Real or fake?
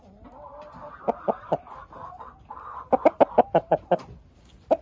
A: real